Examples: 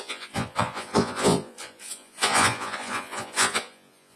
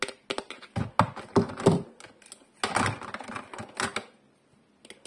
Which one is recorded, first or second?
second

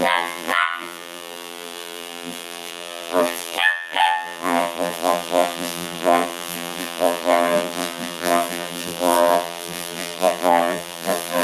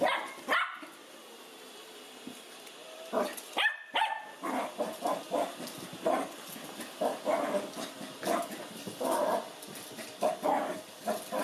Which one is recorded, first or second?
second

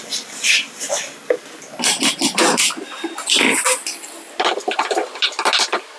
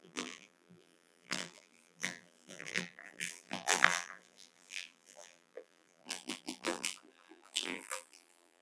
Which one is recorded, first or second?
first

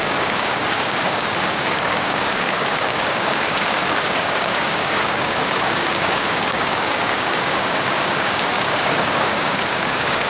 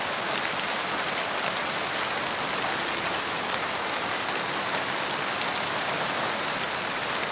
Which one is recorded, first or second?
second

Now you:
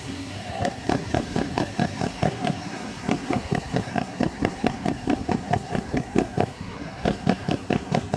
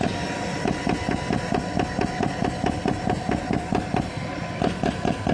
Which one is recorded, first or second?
second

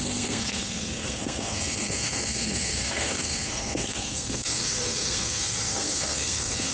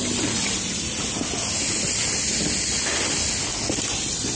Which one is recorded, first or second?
second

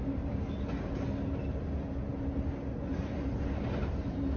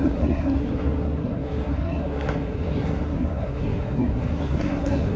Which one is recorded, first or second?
first